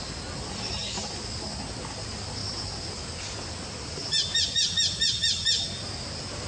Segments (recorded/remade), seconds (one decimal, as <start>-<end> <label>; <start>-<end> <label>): 0.0-6.5 recorded